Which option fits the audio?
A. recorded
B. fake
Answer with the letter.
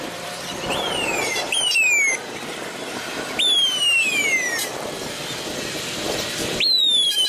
B